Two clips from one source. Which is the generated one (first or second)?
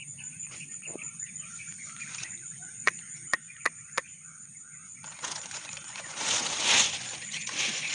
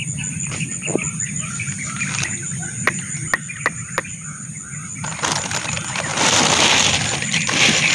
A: first